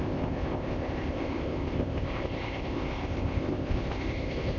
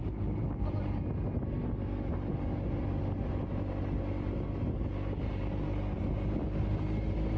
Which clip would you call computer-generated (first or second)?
first